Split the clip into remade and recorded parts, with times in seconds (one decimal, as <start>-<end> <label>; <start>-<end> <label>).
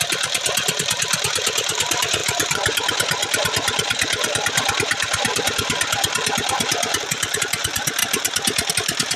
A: 0.0-8.0 remade; 8.0-8.7 recorded; 8.7-9.2 remade